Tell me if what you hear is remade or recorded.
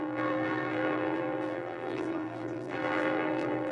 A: remade